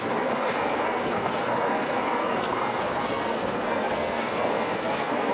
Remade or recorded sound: remade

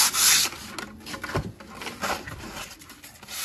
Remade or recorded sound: recorded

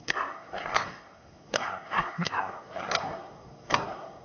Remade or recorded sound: remade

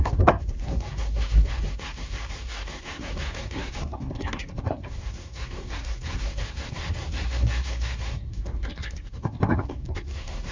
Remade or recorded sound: remade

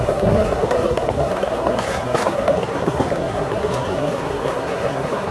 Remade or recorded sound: remade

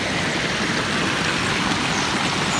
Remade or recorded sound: recorded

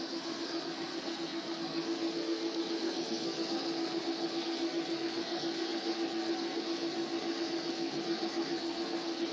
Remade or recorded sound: remade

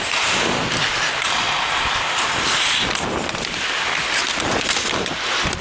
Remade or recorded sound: recorded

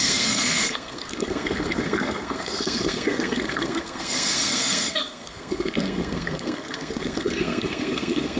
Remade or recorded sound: remade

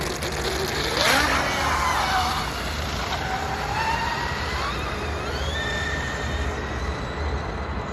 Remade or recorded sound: recorded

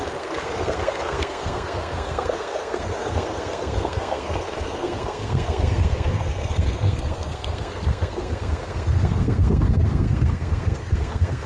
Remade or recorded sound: remade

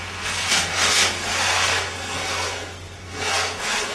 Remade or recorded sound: remade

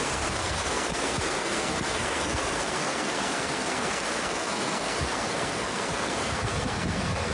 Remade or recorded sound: remade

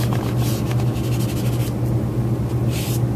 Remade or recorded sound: recorded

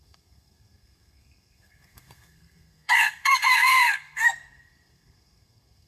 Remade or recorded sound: remade